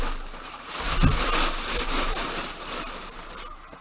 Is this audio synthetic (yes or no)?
no